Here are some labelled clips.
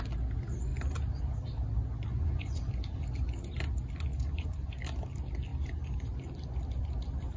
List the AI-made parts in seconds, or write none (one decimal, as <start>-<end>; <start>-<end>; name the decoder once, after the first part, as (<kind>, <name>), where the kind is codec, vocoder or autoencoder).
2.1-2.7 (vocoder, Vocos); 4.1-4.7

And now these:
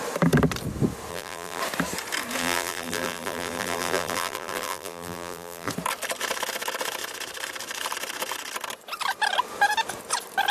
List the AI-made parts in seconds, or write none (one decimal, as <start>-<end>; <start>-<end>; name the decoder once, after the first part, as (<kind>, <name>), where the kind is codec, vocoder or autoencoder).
1.1-1.6 (vocoder, BigVGAN v2); 2.4-5.7

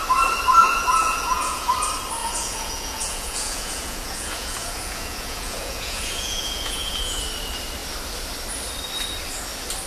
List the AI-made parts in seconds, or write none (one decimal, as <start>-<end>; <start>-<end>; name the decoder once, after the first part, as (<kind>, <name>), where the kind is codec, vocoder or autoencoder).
0.6-1.7 (vocoder, Vocos); 2.2-7.2

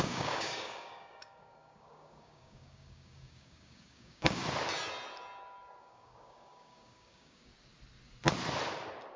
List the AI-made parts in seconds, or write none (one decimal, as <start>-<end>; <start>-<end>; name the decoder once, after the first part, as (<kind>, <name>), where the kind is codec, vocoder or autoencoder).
0.0-4.4 (codec, DAC); 5.8-7.5

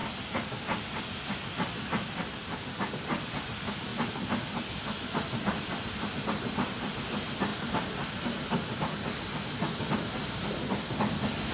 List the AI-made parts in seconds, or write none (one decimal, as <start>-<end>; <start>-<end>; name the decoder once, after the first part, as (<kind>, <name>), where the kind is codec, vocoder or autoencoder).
none